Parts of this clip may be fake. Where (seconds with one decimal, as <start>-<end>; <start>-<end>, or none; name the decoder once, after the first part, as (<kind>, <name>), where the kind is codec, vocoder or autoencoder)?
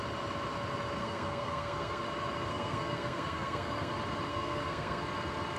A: 1.0-2.0 (codec, SNAC); 2.5-3.9; 4.3-5.0